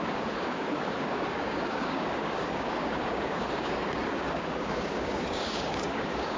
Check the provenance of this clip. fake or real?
fake